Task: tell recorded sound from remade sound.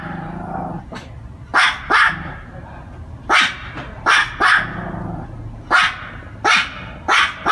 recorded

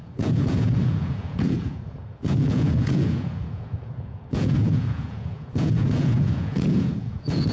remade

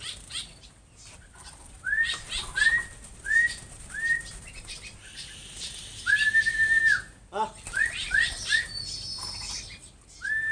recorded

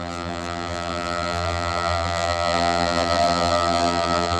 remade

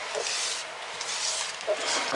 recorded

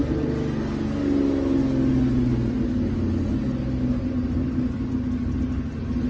recorded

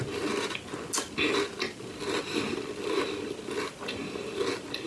recorded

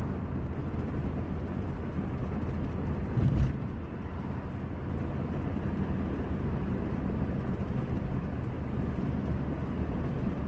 recorded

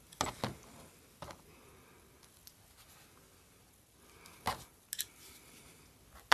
recorded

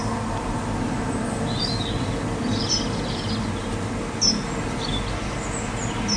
recorded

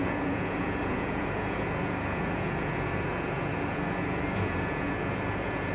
remade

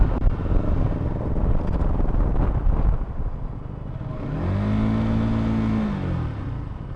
recorded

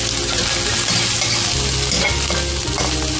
recorded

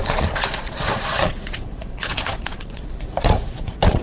remade